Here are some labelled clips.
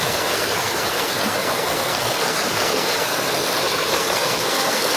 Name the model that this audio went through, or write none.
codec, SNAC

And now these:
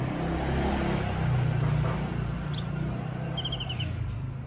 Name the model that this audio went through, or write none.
none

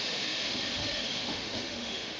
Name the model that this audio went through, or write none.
autoencoder, DAC-VAE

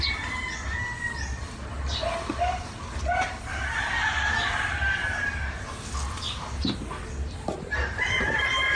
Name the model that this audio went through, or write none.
none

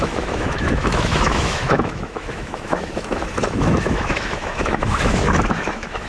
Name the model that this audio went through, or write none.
autoencoder, DAC-VAE